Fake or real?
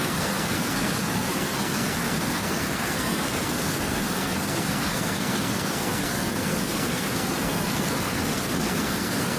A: fake